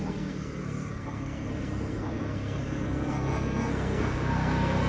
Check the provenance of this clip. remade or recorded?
remade